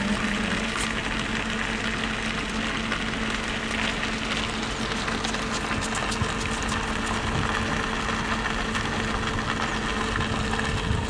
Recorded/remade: recorded